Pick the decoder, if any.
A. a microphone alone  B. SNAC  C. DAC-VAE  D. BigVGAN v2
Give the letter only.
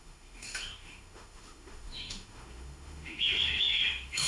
C